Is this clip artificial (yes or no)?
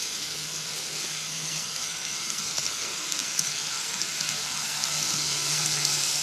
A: yes